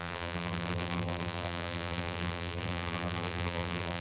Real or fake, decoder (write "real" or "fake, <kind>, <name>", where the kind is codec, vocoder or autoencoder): fake, vocoder, BigVGAN v2